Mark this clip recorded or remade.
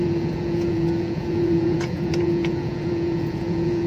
remade